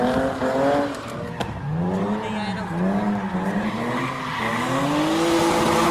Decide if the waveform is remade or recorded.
recorded